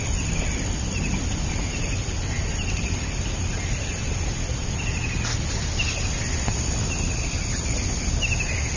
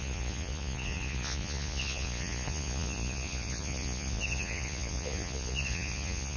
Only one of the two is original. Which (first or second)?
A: first